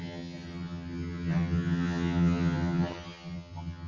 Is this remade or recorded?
remade